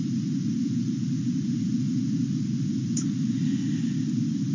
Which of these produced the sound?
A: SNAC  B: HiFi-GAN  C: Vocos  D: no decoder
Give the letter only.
D